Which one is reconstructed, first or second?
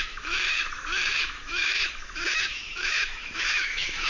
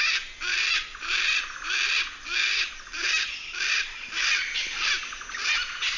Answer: first